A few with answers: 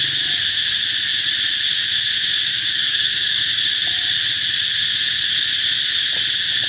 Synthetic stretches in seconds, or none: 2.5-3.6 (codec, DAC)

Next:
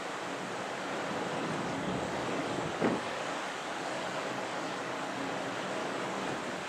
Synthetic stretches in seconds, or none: 1.3-5.3 (codec, DAC); 5.8-6.3

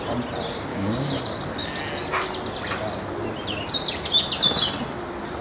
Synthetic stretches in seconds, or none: 0.7-1.2 (codec, DAC)

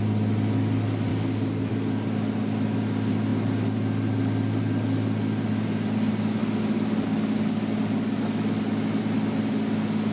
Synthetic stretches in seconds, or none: 1.1-1.7 (codec, DAC); 6.4-8.6

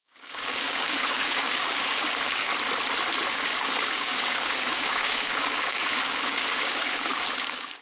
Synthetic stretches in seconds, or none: 0.0-2.5 (codec, DAC); 3.3-7.8